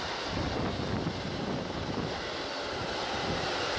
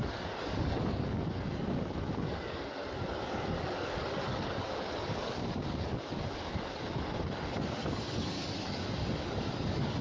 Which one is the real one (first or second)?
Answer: first